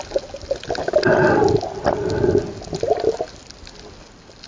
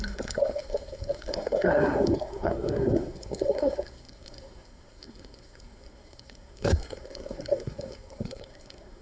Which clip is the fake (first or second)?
second